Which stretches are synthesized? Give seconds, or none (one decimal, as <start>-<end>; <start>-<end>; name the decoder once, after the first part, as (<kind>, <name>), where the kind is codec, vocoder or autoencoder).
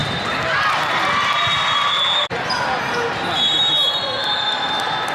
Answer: none